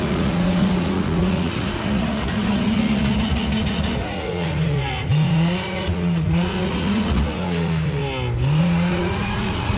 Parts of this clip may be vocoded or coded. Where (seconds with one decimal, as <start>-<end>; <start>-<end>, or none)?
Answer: 0.0-8.0; 8.6-9.8